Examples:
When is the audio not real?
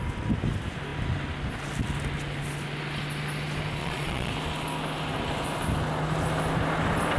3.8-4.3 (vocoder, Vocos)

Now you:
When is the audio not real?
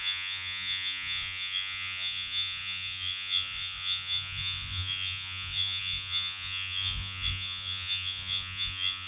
0.0-9.1 (vocoder, Vocos)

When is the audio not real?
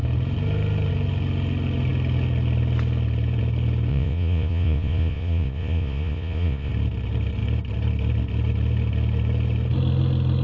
3.9-6.7 (vocoder, Vocos)